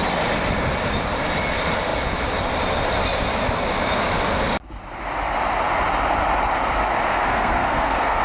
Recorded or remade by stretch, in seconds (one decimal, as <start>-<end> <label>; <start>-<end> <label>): 0.0-7.1 recorded; 7.1-8.2 remade